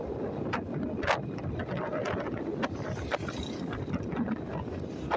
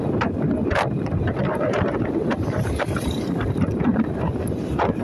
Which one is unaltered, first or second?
first